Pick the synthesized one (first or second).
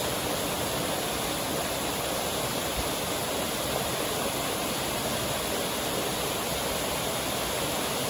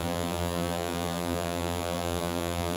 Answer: second